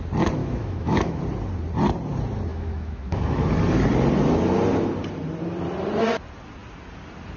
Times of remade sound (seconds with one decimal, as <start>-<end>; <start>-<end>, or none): 0.4-1.2; 2.5-3.5